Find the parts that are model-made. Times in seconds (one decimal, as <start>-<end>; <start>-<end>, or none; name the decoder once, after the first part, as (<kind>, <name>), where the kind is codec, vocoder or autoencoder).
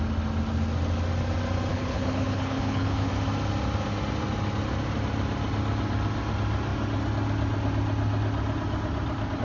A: 1.7-3.1 (codec, HILCodec)